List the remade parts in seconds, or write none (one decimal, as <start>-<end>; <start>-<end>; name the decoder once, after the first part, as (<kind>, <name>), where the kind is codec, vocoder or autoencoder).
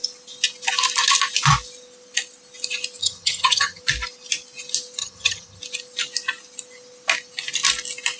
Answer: 3.0-3.8 (vocoder, HiFi-GAN); 5.0-5.6